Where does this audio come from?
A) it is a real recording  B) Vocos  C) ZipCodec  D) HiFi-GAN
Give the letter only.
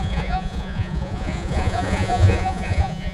B